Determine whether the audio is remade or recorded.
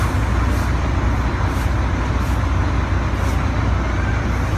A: recorded